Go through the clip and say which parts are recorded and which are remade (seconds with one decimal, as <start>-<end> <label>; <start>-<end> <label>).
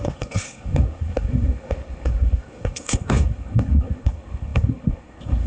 0.0-5.5 remade